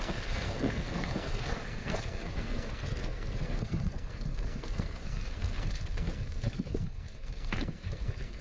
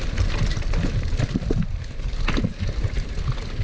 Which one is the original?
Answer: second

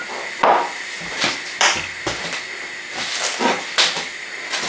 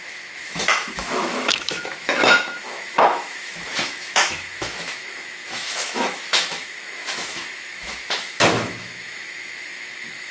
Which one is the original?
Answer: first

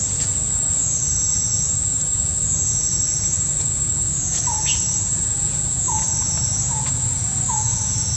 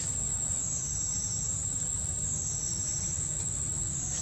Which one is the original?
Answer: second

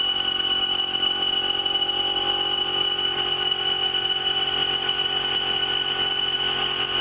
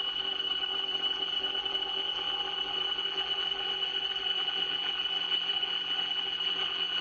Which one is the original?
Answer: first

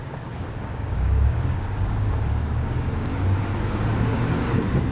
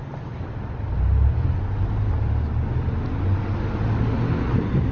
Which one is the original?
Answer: second